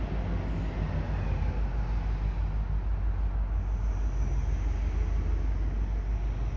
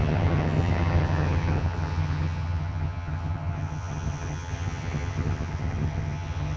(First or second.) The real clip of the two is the first